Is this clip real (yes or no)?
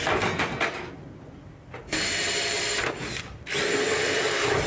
no